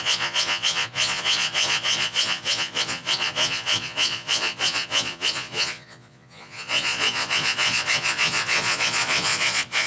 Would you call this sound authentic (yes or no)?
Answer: no